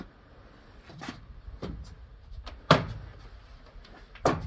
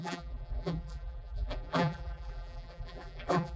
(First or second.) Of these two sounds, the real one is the first